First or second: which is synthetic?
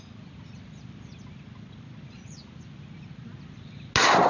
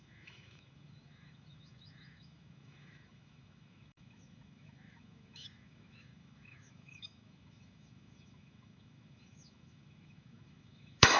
second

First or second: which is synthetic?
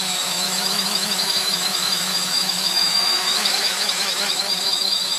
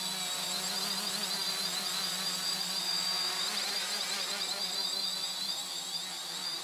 first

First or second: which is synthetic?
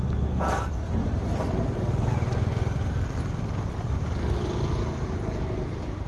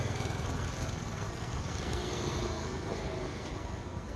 second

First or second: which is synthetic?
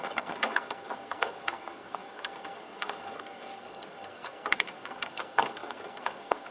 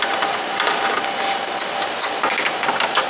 first